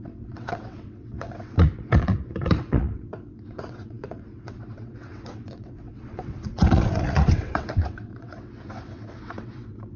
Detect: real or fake fake